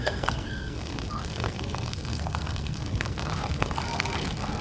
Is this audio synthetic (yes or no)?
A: yes